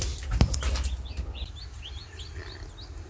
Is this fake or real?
real